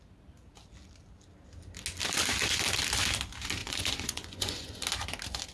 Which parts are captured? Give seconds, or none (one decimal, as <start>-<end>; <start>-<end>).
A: 0.0-3.6; 4.8-5.5